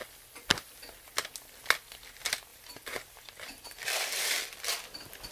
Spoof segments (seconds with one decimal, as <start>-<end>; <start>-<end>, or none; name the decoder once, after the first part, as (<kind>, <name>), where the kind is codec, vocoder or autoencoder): 2.5-5.3 (vocoder, BigVGAN v2)